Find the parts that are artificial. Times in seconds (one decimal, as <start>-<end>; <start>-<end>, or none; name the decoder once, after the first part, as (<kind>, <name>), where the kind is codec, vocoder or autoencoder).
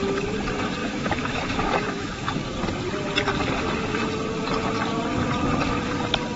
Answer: 0.8-2.3 (autoencoder, DAC-VAE)